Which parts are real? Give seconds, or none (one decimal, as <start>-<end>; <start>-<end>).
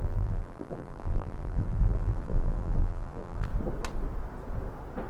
3.5-5.1